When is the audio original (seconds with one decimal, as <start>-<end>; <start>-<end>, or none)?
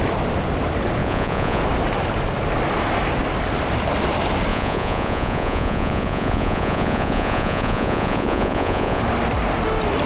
0.0-1.0; 1.6-4.5; 9.0-10.1